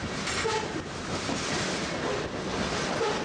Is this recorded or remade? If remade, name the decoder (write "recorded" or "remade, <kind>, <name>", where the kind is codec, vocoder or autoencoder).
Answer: recorded